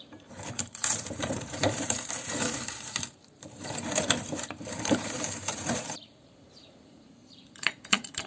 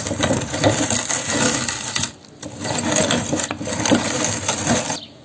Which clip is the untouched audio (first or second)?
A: second